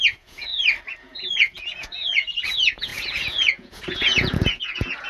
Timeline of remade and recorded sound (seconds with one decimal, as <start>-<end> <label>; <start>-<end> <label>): 0.0-0.5 remade; 0.5-1.0 recorded; 1.0-5.1 remade